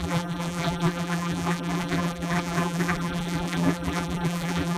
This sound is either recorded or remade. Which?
remade